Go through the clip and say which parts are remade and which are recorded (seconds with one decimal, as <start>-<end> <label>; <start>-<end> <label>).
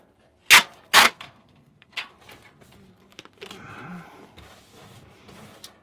0.0-1.0 recorded; 1.0-2.1 remade; 2.1-5.8 recorded